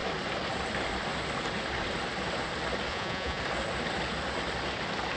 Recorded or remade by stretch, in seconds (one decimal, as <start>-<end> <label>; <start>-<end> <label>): 0.0-2.9 recorded; 2.9-3.4 remade; 3.4-5.2 recorded